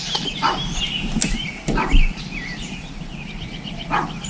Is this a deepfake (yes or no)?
no